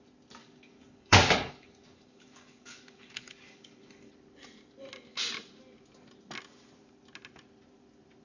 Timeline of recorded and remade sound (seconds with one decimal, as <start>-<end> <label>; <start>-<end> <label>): 0.0-0.4 recorded; 0.4-4.1 remade; 4.1-8.2 recorded